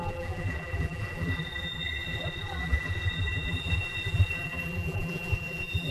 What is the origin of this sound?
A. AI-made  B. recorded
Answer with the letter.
A